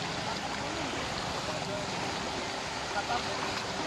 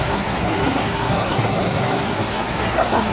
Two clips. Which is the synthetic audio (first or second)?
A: second